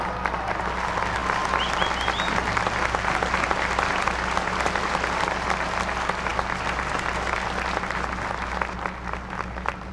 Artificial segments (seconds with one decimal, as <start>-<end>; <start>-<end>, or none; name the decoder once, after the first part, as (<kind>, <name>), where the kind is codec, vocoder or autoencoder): none